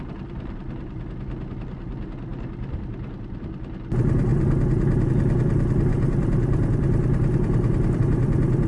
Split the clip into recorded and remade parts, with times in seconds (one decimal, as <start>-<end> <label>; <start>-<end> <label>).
0.0-5.9 recorded; 5.9-8.0 remade; 8.0-8.7 recorded